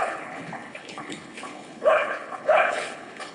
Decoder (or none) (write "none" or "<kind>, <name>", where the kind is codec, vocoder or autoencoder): codec, HILCodec